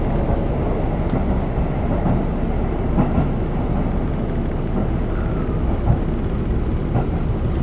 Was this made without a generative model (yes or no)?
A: yes